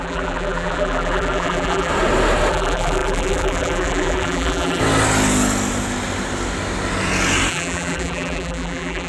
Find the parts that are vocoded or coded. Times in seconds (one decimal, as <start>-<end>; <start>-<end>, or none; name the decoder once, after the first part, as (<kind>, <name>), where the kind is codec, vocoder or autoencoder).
0.0-1.9 (vocoder, BigVGAN v2); 2.5-4.8; 7.5-9.1